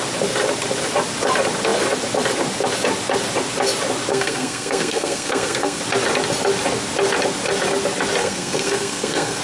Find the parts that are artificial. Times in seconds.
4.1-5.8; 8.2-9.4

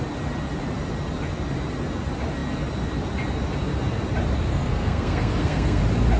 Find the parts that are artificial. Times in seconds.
4.5-5.8

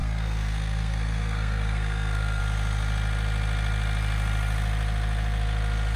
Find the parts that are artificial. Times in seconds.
0.0-2.4

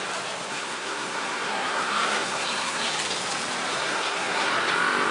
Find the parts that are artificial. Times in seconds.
0.5-2.9; 3.7-4.5

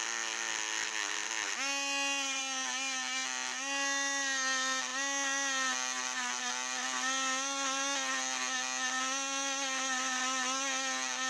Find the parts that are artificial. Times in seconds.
none

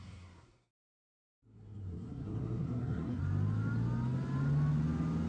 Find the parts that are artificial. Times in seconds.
0.0-3.2